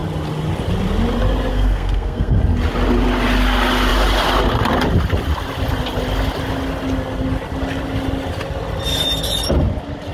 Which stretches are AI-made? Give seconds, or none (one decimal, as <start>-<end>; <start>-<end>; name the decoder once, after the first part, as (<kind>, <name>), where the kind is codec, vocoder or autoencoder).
1.5-2.4 (codec, SNAC)